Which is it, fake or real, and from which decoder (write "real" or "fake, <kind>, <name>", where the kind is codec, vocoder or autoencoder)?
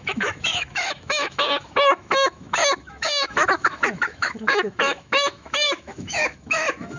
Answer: fake, autoencoder, DAC-VAE